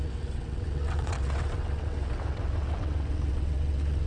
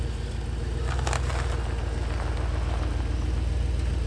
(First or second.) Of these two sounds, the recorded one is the second